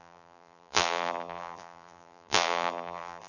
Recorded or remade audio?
remade